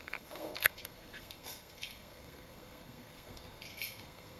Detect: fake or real fake